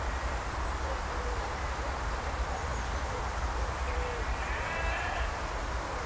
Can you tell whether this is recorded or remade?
recorded